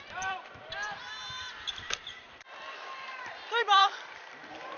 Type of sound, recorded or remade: remade